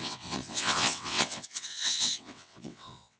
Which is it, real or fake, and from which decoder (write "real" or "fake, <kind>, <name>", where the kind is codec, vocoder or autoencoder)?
fake, vocoder, WaveNeXt